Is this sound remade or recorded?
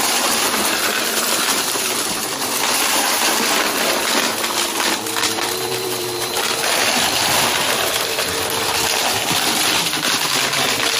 remade